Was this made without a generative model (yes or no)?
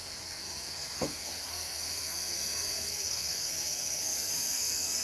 no